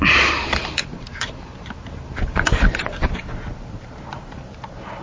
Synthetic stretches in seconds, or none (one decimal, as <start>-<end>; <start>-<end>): 0.0-5.0